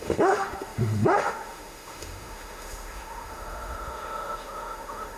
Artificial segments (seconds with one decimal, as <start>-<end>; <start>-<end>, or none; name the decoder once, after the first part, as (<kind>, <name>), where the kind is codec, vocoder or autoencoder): 0.0-5.2 (autoencoder, DAC-VAE)